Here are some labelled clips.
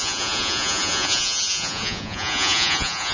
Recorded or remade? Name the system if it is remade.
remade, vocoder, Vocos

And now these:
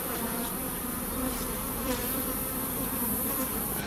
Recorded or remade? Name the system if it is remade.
remade, vocoder, BigVGAN v2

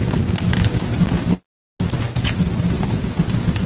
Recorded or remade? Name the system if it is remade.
recorded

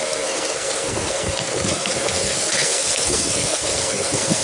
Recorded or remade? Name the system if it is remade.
remade, codec, SNAC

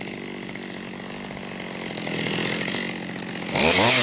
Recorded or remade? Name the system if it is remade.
recorded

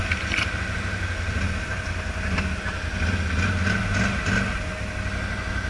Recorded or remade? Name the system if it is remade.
recorded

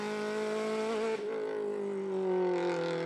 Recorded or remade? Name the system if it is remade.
recorded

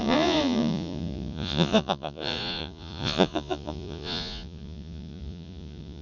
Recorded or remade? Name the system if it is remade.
remade, vocoder, Vocos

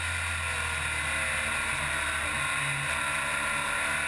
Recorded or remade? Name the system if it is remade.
recorded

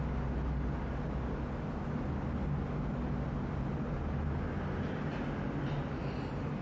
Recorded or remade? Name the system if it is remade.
recorded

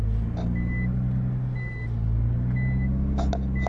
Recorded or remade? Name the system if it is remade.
recorded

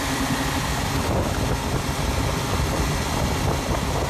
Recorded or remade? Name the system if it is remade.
remade, vocoder, BigVGAN v2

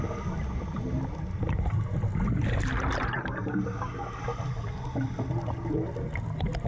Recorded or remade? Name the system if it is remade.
recorded